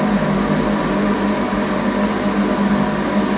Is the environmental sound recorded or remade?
recorded